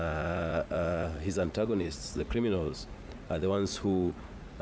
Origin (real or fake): fake